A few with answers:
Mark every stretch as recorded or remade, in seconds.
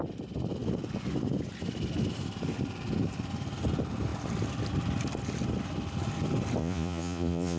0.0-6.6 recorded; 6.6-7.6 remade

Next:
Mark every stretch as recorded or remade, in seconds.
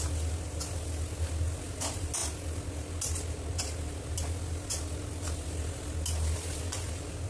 0.0-7.3 recorded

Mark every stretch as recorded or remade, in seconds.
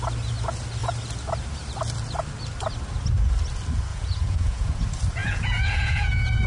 0.0-3.9 recorded; 3.9-4.8 remade; 4.8-5.2 recorded; 5.2-6.5 remade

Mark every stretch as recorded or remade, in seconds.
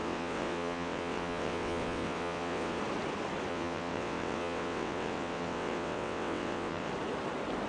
0.0-2.8 remade; 2.8-3.5 recorded; 3.5-6.9 remade; 6.9-7.7 recorded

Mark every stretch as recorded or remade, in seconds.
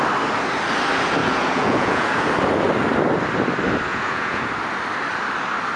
0.0-1.2 recorded; 1.2-2.3 remade; 2.3-3.9 recorded; 3.9-4.4 remade; 4.4-5.8 recorded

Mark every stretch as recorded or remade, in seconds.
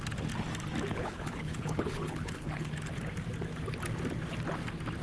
0.0-1.0 recorded; 1.0-2.7 remade; 2.7-5.0 recorded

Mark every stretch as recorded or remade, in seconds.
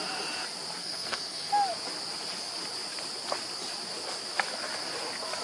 0.0-0.8 recorded; 0.8-1.5 remade; 1.5-5.4 recorded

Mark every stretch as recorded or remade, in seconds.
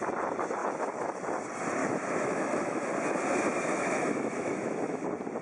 0.0-0.6 recorded; 0.6-1.2 remade; 1.2-1.8 recorded; 1.8-2.9 remade; 2.9-3.7 recorded; 3.7-5.0 remade; 5.0-5.4 recorded